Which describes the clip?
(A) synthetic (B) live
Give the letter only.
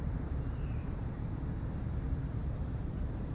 A